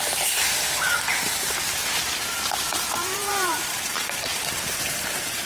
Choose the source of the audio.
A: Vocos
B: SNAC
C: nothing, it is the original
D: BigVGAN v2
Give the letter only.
D